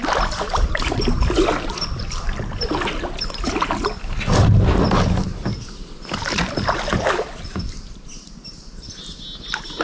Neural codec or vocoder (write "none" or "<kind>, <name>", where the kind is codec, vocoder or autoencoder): none